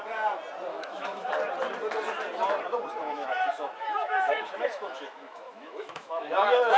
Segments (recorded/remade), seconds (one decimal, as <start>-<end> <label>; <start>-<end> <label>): 0.0-0.7 recorded; 0.7-1.3 remade; 1.3-3.0 recorded; 3.0-6.8 remade